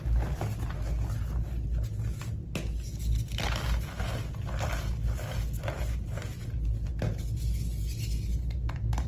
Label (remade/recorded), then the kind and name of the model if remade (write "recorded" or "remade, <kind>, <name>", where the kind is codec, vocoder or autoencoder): recorded